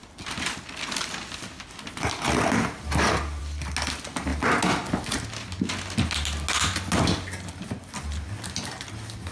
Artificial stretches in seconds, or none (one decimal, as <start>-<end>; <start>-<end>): none